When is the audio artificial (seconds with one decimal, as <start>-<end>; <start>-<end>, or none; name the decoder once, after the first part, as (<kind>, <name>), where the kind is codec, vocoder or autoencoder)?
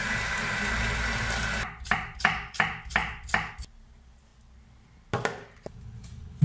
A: none